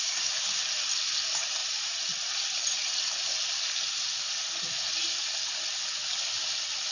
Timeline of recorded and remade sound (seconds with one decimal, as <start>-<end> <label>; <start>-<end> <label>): 0.0-6.9 recorded